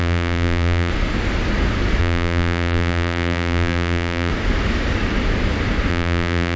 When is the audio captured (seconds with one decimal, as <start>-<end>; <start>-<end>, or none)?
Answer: 0.9-2.0; 4.3-5.9